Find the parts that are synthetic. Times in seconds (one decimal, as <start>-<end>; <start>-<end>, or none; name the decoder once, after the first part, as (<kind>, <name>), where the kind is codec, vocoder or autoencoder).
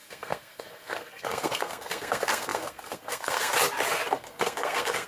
0.0-3.5 (codec, SNAC); 4.1-5.1